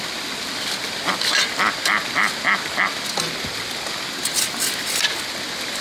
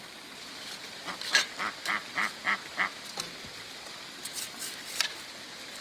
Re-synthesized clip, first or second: second